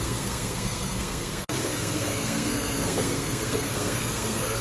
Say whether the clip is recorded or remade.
remade